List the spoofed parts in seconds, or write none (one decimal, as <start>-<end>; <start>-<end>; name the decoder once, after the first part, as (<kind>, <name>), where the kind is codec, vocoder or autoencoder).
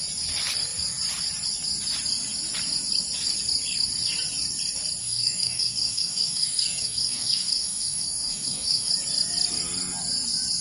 5.0-8.9 (codec, DAC)